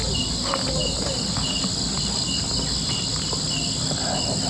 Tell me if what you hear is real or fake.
real